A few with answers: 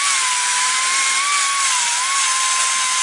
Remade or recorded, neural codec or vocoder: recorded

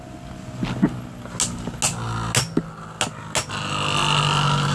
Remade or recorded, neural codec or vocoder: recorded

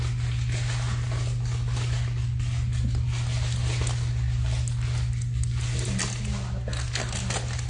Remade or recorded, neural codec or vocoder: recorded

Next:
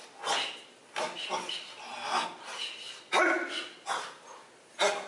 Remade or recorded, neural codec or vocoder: recorded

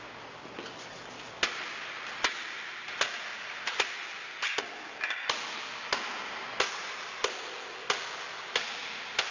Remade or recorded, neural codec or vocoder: recorded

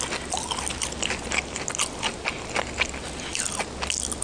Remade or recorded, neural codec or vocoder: recorded